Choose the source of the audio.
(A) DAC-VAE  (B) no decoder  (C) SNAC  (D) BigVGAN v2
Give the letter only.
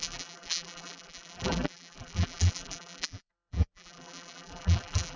D